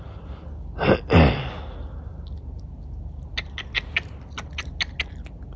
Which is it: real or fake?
real